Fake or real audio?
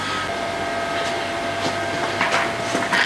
real